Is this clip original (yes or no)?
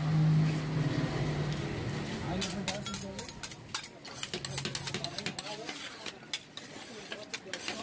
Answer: yes